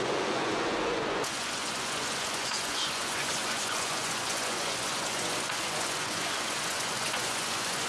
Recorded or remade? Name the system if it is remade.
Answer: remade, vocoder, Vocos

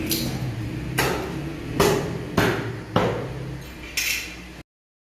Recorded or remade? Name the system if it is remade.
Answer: recorded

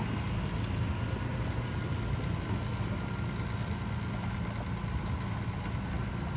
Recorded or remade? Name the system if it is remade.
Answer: recorded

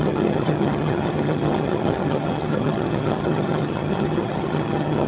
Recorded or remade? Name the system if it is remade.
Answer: remade, vocoder, HiFi-GAN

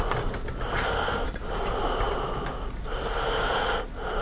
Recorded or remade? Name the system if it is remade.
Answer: recorded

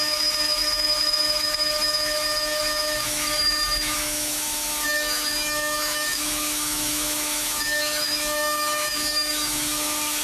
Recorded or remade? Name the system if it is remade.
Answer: remade, autoencoder, DAC-VAE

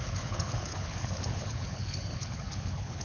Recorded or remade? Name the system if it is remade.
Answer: remade, codec, HILCodec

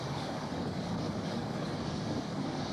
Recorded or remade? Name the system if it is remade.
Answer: remade, codec, DAC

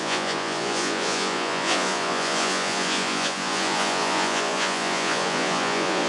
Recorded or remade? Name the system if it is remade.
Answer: remade, vocoder, Vocos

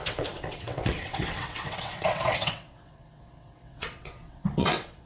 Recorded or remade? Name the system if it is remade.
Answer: remade, vocoder, WaveNeXt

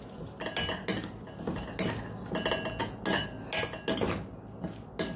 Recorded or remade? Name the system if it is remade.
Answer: recorded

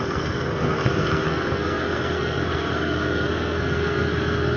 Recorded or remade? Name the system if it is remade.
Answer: remade, codec, SNAC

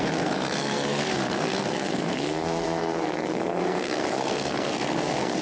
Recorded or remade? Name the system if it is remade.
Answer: remade, codec, SNAC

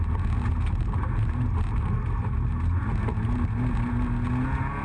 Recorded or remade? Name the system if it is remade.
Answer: recorded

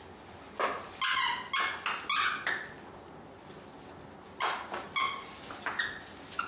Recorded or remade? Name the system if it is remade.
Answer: recorded